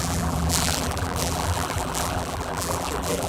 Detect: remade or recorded remade